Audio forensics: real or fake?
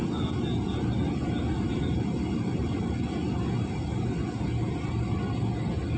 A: real